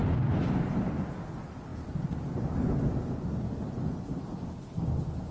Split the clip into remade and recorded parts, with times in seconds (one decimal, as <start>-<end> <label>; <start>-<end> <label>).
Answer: 0.0-1.0 remade; 1.0-1.7 recorded; 1.7-3.5 remade; 3.5-5.3 recorded